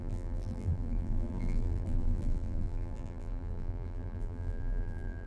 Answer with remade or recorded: remade